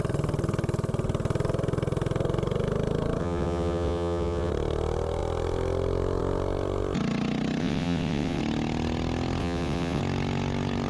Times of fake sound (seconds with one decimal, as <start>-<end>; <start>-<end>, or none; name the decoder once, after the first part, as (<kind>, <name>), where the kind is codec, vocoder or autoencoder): 3.2-4.5 (vocoder, WaveNeXt); 7.6-8.4; 9.4-10.0